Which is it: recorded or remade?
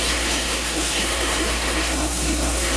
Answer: remade